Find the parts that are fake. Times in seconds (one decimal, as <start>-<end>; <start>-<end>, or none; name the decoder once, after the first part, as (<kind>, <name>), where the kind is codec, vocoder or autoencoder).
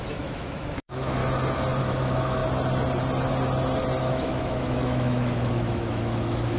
0.0-1.2 (autoencoder, DAC-VAE); 1.8-2.4; 4.0-6.6